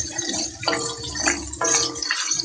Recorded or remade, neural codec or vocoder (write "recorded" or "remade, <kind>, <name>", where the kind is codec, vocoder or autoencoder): recorded